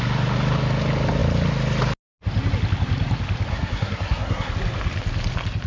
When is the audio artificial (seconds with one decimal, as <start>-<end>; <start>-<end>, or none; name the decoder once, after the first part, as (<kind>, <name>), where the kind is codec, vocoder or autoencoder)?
3.5-4.5 (codec, SNAC)